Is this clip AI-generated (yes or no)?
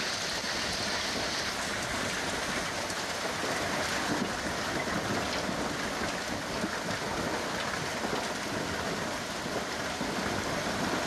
no